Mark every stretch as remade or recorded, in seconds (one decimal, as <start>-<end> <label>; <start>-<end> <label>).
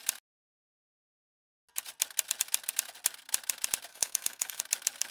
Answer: 0.0-3.9 recorded; 3.9-4.6 remade; 4.6-5.1 recorded